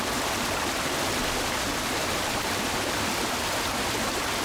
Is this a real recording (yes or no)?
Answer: yes